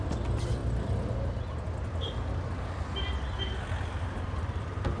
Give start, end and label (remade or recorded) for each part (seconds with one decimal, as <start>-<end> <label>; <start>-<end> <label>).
0.0-5.0 recorded